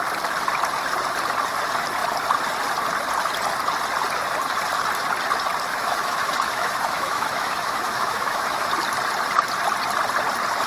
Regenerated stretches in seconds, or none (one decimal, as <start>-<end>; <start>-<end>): 5.7-8.7